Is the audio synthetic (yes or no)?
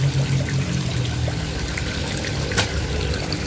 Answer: yes